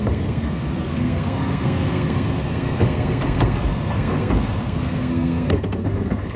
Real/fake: fake